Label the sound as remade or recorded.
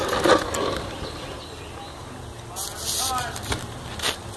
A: recorded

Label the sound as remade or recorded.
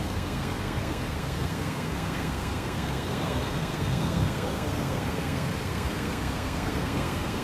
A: remade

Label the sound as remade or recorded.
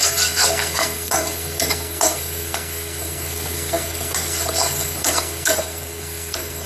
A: remade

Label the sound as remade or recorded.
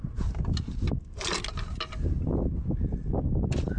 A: recorded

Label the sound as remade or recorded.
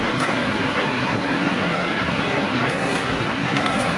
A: remade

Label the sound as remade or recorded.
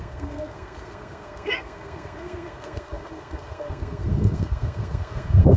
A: remade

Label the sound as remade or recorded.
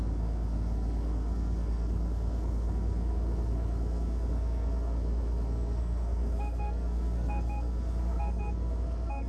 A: remade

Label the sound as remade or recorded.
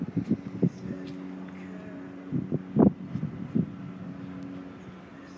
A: recorded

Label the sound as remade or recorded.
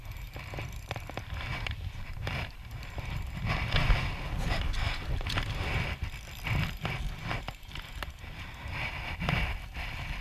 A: recorded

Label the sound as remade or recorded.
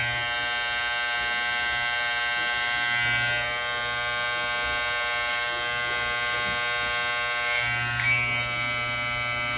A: recorded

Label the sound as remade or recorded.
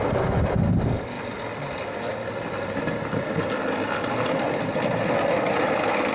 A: recorded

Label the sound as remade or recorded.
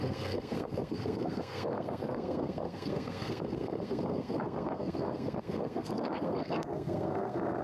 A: remade